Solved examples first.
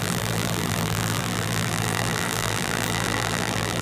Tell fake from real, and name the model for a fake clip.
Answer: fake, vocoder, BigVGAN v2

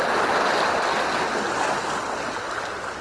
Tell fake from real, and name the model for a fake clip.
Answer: real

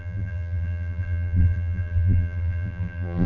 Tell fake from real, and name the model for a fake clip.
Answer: fake, vocoder, BigVGAN v2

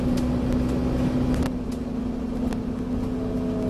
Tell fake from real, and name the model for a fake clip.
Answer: real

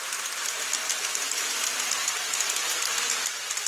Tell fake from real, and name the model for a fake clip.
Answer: real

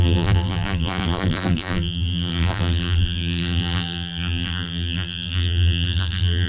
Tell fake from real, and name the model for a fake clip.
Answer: fake, vocoder, BigVGAN v2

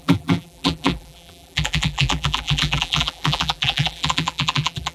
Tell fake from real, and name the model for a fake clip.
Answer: fake, vocoder, BigVGAN v2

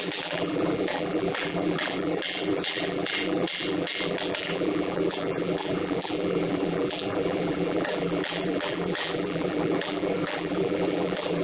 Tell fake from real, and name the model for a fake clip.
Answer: fake, vocoder, BigVGAN v2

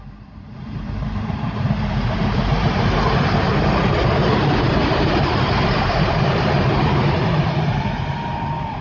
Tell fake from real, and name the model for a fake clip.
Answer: fake, vocoder, BigVGAN v2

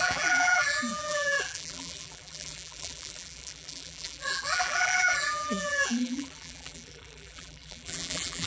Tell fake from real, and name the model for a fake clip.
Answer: fake, vocoder, BigVGAN v2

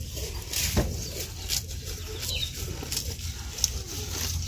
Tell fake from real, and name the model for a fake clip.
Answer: real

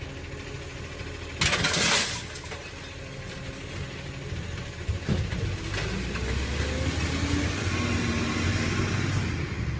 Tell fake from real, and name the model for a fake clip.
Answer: real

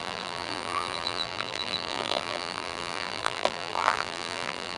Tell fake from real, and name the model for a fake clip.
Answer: fake, vocoder, BigVGAN v2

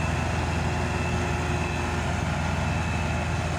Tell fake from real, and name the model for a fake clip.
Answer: real